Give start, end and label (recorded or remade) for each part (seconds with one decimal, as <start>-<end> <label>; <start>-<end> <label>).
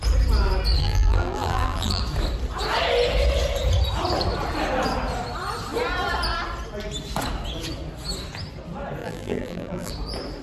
0.0-0.8 recorded; 0.8-2.0 remade; 2.0-9.0 recorded; 9.0-9.9 remade; 9.9-10.4 recorded